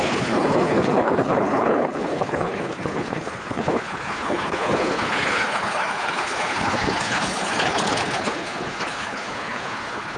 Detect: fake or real fake